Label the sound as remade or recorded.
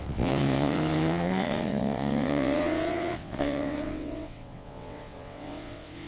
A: remade